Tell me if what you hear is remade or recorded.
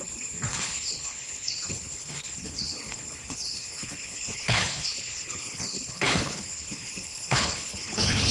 remade